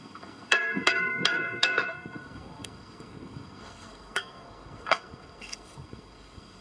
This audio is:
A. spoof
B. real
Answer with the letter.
A